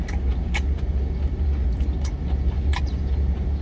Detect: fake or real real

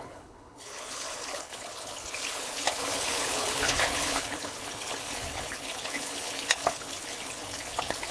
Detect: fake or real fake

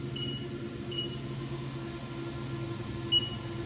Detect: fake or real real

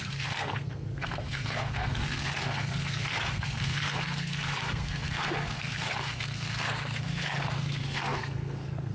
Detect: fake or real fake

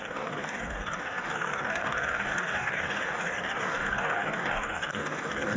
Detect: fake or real fake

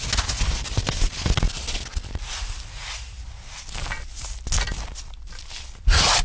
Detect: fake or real real